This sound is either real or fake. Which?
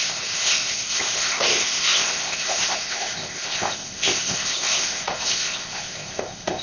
fake